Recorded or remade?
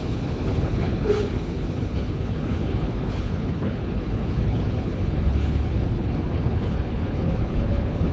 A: remade